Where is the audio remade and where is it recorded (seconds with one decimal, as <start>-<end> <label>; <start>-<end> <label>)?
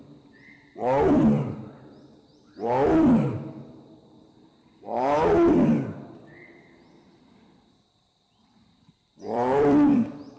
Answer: 0.0-10.4 remade